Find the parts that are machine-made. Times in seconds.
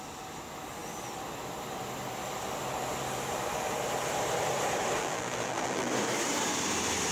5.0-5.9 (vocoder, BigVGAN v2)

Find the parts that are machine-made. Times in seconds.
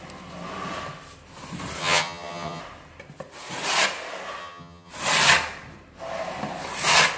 1.8-2.6 (vocoder, HiFi-GAN); 4.4-4.9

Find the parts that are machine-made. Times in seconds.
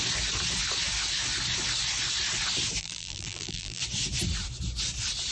2.8-3.8 (vocoder, BigVGAN v2)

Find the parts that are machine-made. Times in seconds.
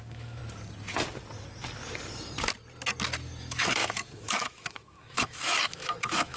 0.0-0.4 (autoencoder, DAC-VAE); 3.4-6.4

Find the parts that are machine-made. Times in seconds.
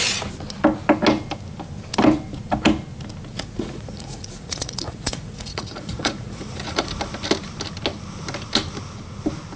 3.3-6.9 (vocoder, Vocos)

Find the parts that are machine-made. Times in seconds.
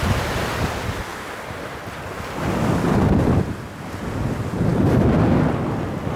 none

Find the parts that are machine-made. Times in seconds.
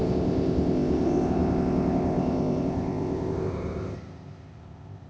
0.0-5.1 (codec, ZipCodec)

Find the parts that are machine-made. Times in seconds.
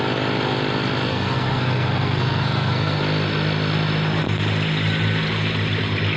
1.1-3.0 (codec, SNAC)